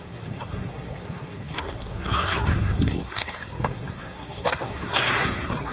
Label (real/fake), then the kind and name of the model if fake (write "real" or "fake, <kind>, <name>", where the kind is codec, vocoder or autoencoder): fake, codec, SNAC